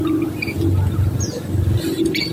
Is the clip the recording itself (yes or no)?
yes